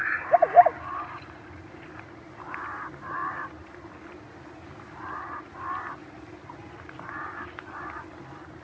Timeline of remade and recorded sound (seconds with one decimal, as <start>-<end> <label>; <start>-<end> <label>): 0.0-8.6 recorded